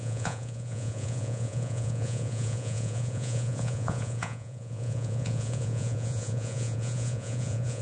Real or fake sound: fake